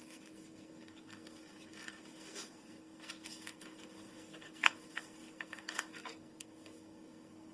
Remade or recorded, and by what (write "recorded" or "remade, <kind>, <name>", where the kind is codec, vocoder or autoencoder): remade, codec, SNAC